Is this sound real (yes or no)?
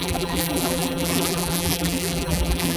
no